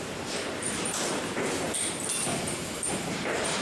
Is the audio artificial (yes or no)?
yes